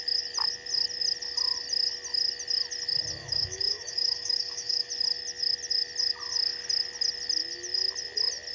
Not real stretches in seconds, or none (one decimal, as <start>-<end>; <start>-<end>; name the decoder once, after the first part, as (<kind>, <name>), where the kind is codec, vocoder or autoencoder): 3.2-4.9 (autoencoder, DAC-VAE)